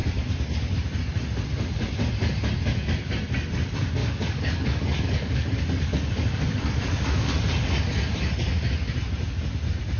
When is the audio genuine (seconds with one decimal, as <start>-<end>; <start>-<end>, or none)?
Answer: 0.0-4.0; 7.4-10.0